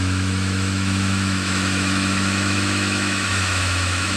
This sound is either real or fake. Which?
fake